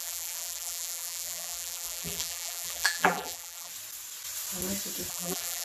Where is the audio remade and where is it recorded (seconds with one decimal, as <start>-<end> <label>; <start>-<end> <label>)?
0.0-3.7 remade; 3.7-5.1 recorded; 5.1-5.6 remade

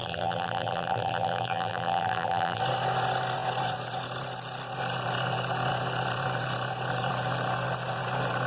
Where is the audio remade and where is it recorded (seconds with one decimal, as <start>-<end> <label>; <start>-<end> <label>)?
0.0-2.6 remade; 2.6-8.5 recorded

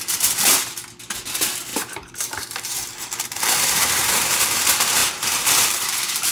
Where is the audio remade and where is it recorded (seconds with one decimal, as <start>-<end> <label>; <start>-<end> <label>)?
0.0-1.7 recorded; 1.7-4.3 remade; 4.3-5.0 recorded; 5.0-6.3 remade

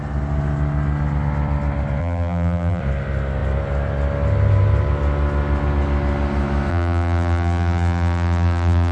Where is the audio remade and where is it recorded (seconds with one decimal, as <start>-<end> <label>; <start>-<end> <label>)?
0.0-2.0 recorded; 2.0-2.8 remade; 2.8-6.7 recorded; 6.7-8.9 remade

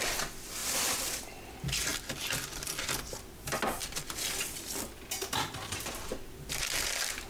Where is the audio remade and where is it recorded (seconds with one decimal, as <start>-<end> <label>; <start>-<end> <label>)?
0.0-1.9 recorded; 1.9-2.7 remade; 2.7-7.3 recorded

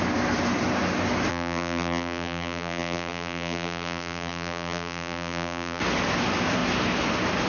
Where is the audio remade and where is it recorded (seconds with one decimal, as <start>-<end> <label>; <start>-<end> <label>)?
0.0-1.3 recorded; 1.3-5.8 remade; 5.8-7.5 recorded

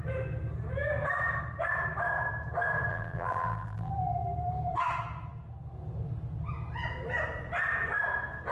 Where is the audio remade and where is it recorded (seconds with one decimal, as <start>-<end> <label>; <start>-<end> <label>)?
0.0-2.9 recorded; 2.9-3.9 remade; 3.9-8.5 recorded